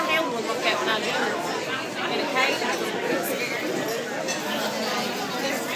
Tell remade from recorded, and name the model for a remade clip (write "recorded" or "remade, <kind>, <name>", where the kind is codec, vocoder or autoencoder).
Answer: recorded